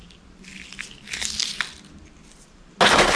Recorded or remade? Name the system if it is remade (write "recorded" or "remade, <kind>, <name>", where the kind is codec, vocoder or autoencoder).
recorded